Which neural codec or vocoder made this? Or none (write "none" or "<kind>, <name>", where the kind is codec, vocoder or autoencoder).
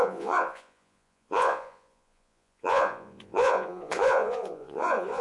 vocoder, Vocos